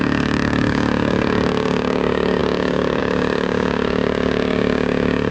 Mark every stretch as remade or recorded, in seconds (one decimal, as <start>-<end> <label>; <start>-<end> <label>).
0.0-5.3 remade